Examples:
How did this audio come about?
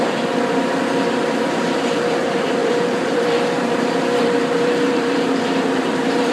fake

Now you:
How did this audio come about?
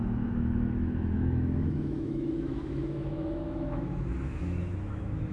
fake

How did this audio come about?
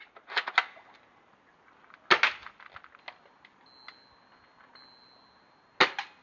real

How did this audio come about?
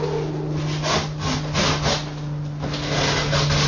real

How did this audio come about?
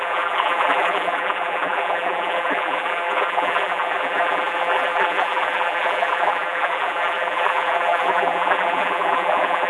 fake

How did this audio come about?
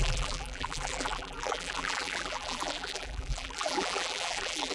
fake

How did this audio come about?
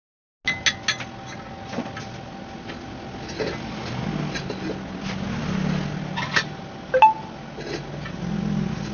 real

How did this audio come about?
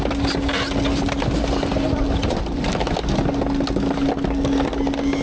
real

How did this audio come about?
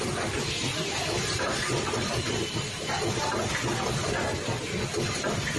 real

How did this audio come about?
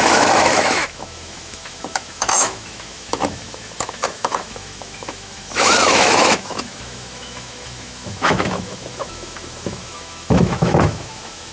fake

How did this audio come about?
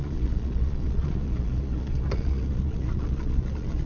fake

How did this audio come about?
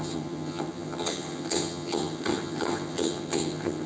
fake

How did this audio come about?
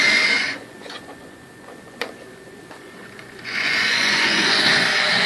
fake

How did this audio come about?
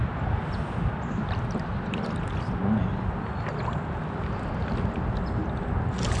real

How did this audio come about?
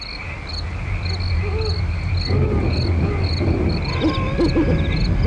real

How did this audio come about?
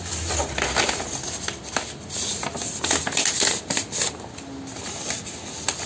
real